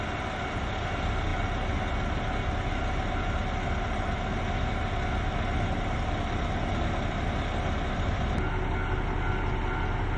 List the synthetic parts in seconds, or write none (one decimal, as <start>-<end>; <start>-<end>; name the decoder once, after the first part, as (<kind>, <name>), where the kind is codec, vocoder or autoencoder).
none